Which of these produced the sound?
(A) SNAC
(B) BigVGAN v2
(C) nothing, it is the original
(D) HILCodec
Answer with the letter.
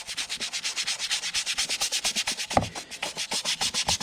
C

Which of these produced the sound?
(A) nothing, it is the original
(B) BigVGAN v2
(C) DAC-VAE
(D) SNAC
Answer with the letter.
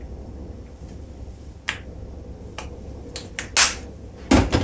A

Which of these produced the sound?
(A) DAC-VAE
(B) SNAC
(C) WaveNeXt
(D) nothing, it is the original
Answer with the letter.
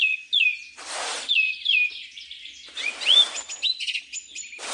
D